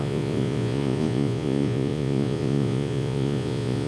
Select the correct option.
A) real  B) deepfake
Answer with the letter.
B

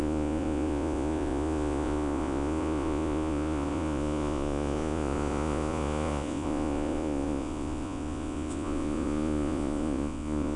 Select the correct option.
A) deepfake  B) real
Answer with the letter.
A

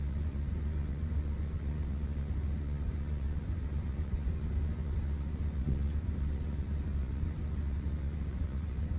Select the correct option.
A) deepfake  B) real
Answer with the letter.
A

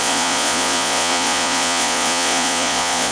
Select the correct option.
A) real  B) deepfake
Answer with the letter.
B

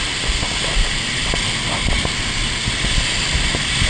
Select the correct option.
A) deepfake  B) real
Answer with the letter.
B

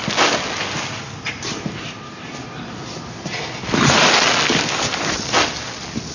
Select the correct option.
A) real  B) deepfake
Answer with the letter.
A